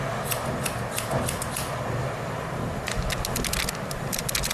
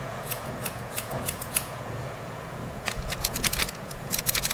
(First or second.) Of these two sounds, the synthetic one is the second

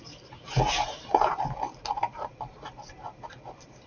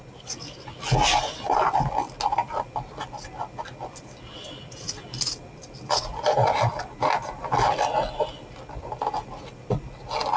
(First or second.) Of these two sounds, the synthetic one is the first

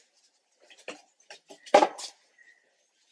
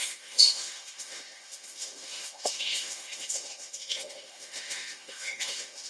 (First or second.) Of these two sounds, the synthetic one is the second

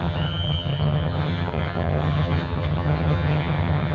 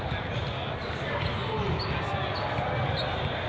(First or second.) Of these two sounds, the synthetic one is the first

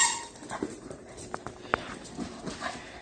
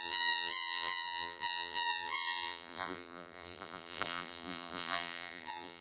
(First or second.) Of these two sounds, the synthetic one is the second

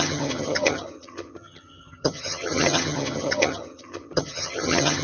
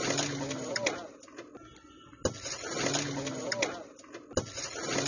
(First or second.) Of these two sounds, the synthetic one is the first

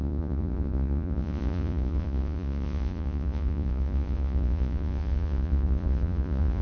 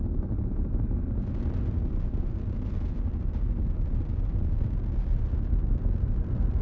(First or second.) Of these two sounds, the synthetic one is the first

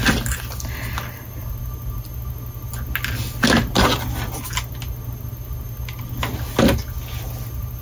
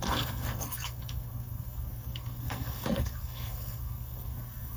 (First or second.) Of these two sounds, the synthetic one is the second